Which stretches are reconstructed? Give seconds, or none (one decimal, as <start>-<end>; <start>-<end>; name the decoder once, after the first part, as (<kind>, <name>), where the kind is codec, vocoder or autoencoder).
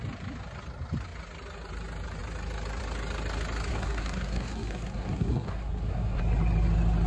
3.7-6.2 (codec, SNAC)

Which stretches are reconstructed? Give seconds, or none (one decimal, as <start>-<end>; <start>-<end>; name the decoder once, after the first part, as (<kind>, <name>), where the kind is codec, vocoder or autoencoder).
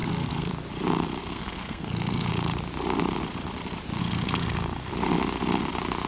0.0-0.5 (codec, SNAC); 1.2-2.3; 4.0-4.9